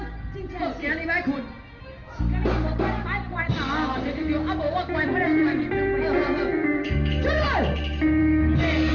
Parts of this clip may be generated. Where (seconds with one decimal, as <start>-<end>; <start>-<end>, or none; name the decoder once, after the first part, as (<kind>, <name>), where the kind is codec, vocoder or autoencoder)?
3.0-7.2 (vocoder, BigVGAN v2)